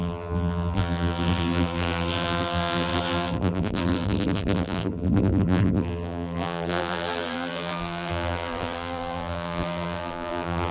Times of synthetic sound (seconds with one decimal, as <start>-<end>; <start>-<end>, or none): 0.0-10.7